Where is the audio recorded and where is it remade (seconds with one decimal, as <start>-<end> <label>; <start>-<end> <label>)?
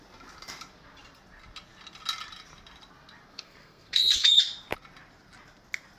0.0-3.3 recorded; 3.3-4.4 remade; 4.4-6.0 recorded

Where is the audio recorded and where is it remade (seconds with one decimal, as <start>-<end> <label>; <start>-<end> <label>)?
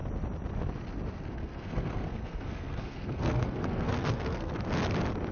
0.0-1.3 recorded; 1.3-4.5 remade; 4.5-5.3 recorded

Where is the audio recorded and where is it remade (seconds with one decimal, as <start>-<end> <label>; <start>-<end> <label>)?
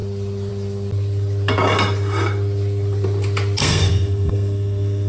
0.0-3.6 recorded; 3.6-5.1 remade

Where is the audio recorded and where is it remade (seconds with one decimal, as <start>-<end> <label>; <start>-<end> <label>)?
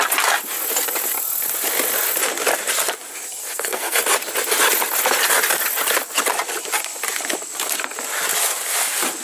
0.0-3.4 recorded; 3.4-4.0 remade; 4.0-9.2 recorded